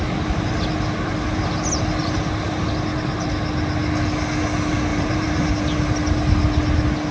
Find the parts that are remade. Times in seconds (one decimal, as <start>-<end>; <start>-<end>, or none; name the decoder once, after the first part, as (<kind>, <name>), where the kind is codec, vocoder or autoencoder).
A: 2.0-2.6 (vocoder, BigVGAN v2); 4.9-5.5